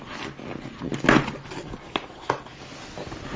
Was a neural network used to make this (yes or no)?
no